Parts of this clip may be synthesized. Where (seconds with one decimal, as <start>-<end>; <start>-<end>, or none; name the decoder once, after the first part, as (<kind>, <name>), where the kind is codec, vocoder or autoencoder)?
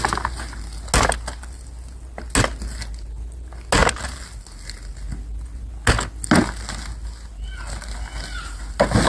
none